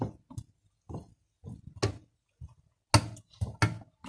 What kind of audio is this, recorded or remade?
recorded